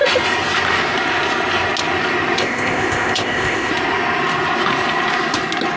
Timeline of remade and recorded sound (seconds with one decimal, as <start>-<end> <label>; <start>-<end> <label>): 0.0-2.4 recorded; 2.4-3.7 remade; 3.7-5.8 recorded